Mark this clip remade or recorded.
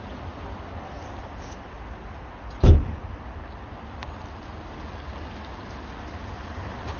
recorded